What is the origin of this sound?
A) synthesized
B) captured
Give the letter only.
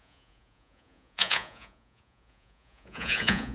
A